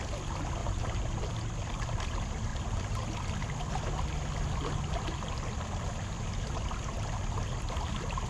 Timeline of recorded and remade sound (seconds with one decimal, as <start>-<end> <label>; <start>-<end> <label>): 0.0-0.6 recorded; 0.6-1.2 remade; 1.2-2.5 recorded; 2.5-3.1 remade; 3.1-8.3 recorded